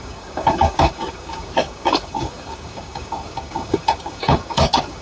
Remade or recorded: remade